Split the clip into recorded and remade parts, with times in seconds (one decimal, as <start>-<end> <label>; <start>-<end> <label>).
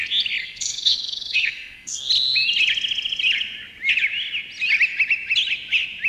0.0-0.4 recorded; 0.4-2.1 remade; 2.1-6.1 recorded